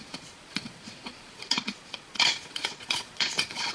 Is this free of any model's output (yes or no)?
no